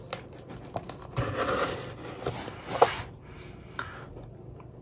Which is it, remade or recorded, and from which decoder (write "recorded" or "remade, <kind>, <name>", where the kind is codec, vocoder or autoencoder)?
recorded